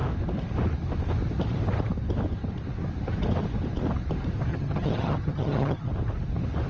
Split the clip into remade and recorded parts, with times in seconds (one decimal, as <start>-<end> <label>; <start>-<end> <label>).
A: 0.0-4.5 recorded; 4.5-5.9 remade; 5.9-6.7 recorded